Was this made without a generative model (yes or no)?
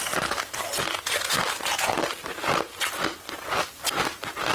yes